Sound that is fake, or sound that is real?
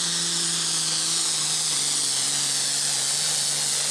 real